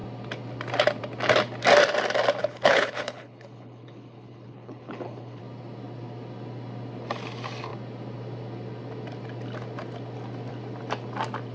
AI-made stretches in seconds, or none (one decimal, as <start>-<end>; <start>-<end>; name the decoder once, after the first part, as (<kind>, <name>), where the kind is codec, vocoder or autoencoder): 2.4-5.4 (codec, HILCodec)